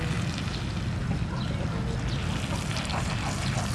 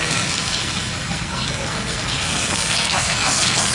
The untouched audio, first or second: first